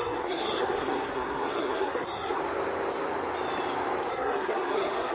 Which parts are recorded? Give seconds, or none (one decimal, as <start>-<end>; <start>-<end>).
2.4-4.1

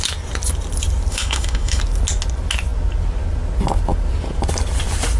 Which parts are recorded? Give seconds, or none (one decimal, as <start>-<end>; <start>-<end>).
0.0-1.1; 1.8-5.2

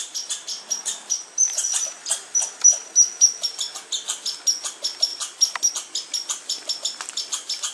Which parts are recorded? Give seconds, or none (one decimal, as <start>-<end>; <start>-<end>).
0.0-7.7

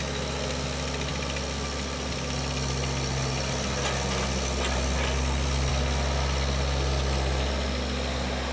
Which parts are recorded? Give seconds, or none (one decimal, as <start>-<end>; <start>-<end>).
0.0-8.5

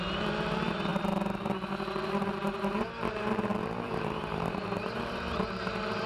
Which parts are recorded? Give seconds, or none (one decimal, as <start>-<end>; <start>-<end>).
none